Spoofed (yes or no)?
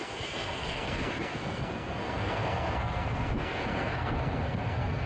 yes